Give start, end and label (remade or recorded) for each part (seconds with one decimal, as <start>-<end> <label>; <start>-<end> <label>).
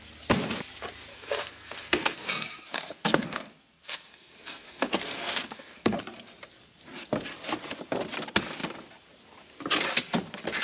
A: 0.0-1.1 recorded; 1.1-6.0 remade; 6.0-10.6 recorded